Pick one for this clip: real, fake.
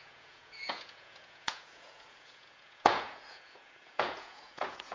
fake